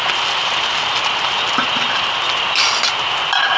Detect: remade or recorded recorded